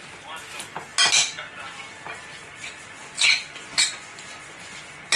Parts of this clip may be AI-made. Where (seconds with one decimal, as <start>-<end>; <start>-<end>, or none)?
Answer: 2.4-5.2